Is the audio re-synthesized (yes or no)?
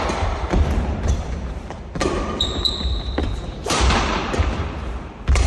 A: yes